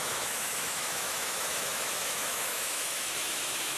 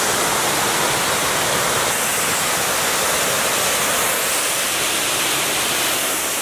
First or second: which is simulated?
first